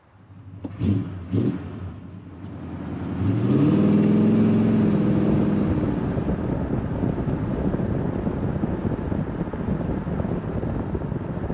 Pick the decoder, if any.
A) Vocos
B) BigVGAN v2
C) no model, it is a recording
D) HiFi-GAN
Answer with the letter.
C